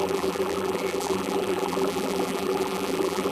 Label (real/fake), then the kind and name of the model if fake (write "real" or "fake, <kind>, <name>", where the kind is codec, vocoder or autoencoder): fake, vocoder, BigVGAN v2